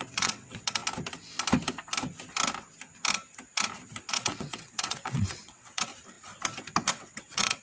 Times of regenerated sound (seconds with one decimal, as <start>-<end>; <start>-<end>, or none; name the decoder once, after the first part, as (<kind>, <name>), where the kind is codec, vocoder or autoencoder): 0.0-0.8 (vocoder, WaveNeXt); 4.1-5.9; 6.9-7.6